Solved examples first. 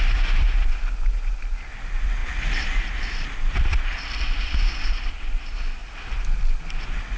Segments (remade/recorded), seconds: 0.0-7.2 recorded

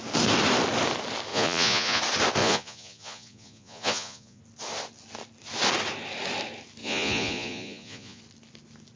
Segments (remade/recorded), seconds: 0.0-1.3 recorded; 1.3-2.0 remade; 2.0-2.4 recorded; 2.4-4.4 remade; 4.4-6.8 recorded; 6.8-8.2 remade; 8.2-9.0 recorded

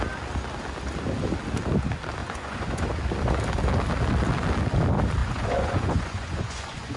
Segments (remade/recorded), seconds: 0.0-2.2 recorded; 2.2-2.9 remade; 2.9-5.2 recorded; 5.2-7.0 remade

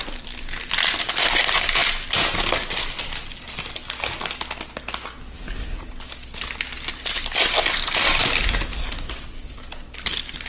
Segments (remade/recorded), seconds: 0.0-10.5 recorded

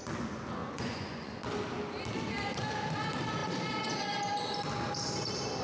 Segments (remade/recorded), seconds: 0.0-0.6 recorded; 0.6-1.4 remade; 1.4-5.6 recorded

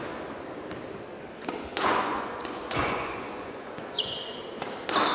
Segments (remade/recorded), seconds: 0.0-1.7 recorded; 1.7-4.4 remade; 4.4-5.1 recorded

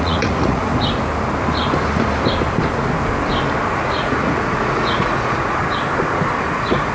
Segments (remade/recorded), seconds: 0.0-0.7 remade; 0.7-3.8 recorded; 3.8-5.6 remade; 5.6-6.4 recorded; 6.4-6.9 remade